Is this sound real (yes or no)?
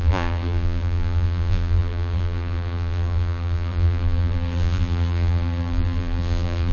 no